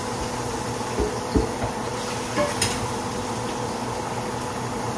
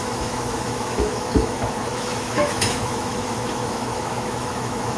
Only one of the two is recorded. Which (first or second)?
first